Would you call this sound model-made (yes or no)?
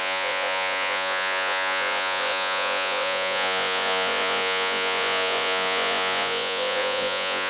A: yes